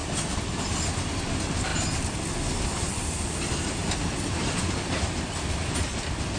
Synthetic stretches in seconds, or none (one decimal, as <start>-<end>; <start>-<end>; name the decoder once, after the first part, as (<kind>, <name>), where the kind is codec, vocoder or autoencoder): none